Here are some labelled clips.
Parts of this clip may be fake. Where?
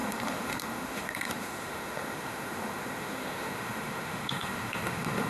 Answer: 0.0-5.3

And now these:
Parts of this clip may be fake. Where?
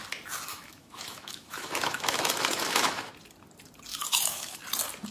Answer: 0.5-3.1; 3.9-4.6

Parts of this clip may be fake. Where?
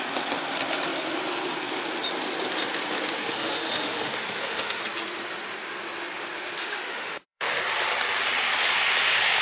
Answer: 3.2-4.8; 6.6-7.6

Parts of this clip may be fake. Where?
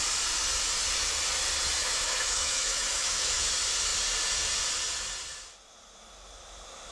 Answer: 1.8-3.5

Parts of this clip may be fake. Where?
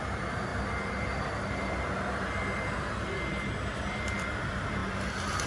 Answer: none